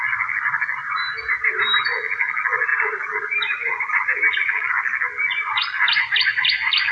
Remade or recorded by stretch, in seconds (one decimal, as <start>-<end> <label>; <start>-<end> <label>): 0.0-6.9 recorded